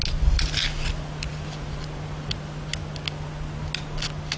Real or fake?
real